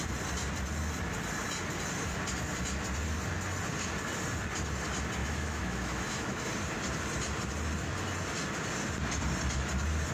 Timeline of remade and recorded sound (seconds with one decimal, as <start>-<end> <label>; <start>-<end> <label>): 0.0-5.2 recorded; 5.2-6.5 remade; 6.5-10.1 recorded